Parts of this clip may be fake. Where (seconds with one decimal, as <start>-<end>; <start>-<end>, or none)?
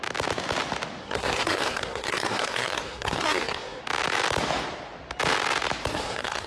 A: 1.0-3.8; 5.9-6.5